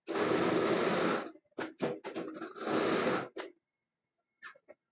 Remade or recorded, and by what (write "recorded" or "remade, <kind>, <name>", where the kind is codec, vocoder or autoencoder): recorded